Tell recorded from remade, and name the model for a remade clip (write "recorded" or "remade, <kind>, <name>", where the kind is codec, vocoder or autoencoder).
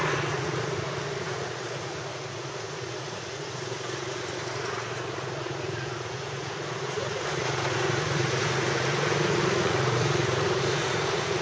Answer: remade, vocoder, Vocos